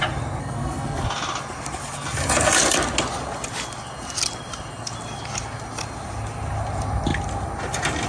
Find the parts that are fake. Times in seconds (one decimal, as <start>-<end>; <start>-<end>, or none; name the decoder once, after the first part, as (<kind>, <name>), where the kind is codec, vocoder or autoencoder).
0.4-1.0 (codec, SNAC)